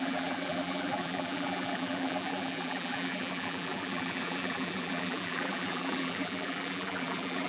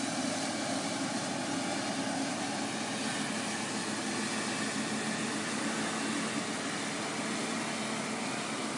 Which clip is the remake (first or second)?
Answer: first